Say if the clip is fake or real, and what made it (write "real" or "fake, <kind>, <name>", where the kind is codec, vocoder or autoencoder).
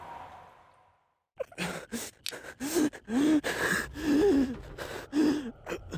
real